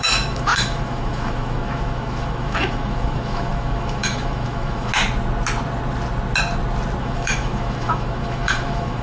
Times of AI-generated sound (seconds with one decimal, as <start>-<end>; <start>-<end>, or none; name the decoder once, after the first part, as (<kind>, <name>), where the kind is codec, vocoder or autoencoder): 0.0-4.9 (autoencoder, DAC-VAE); 7.0-9.0